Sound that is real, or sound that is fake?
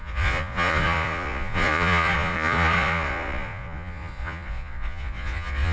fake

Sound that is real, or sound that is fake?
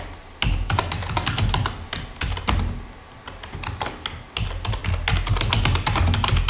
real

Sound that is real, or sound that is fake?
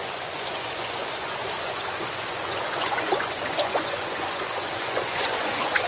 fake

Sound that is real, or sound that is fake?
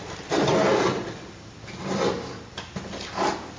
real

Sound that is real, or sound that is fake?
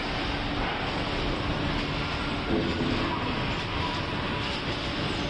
real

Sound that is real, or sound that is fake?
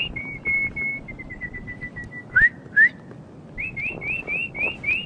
real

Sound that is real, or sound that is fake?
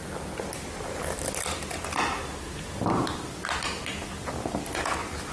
real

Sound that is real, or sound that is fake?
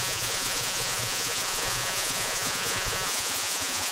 fake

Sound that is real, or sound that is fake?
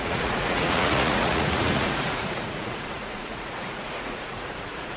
fake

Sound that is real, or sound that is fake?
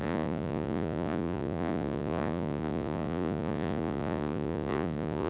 fake